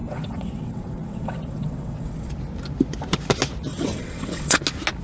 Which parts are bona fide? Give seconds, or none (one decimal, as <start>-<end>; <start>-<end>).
2.3-3.7; 4.6-5.0